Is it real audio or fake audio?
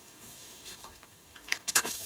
fake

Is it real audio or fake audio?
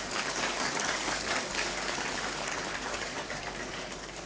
fake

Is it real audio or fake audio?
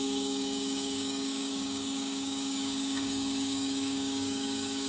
fake